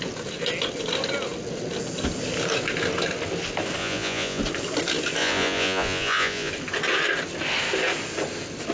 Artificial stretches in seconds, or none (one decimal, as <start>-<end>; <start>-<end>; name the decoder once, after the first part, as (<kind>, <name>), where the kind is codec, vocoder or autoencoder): 3.8-4.4 (vocoder, Vocos); 5.2-6.5

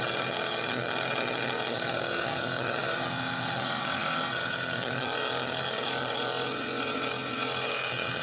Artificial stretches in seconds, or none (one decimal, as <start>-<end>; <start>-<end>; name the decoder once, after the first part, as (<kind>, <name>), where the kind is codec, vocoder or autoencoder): 0.0-8.2 (vocoder, HiFi-GAN)

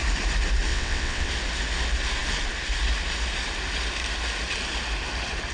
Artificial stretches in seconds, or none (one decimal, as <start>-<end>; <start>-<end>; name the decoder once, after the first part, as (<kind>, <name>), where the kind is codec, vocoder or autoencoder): 0.7-1.3 (vocoder, WaveNeXt)

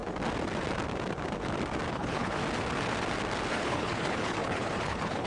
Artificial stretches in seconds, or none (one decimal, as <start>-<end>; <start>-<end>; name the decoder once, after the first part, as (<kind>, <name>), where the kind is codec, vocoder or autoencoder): 1.9-2.4 (codec, HILCodec); 3.5-5.3

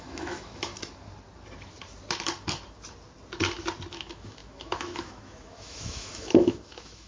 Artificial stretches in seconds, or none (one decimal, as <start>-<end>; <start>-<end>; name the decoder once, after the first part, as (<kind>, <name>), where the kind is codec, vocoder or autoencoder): 0.0-0.7 (autoencoder, DAC-VAE); 3.9-7.1

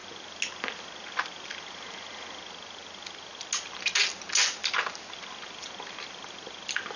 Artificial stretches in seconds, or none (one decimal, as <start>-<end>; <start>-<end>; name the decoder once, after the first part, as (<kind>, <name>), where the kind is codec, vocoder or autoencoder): none

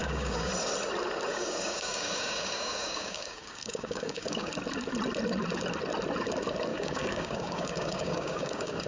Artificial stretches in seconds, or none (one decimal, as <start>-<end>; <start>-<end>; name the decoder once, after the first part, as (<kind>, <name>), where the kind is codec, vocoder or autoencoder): 0.0-0.5 (codec, DAC); 1.3-4.5; 6.7-8.9

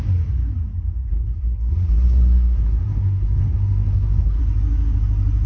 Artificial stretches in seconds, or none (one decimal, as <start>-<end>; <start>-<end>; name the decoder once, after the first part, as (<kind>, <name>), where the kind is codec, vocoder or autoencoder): 1.1-4.4 (codec, SNAC)